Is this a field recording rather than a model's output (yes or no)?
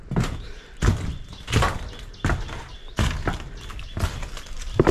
yes